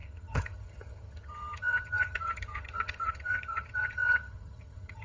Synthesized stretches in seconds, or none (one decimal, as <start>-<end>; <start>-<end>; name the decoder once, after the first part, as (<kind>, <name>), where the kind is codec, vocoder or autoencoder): 0.0-5.0 (vocoder, HiFi-GAN)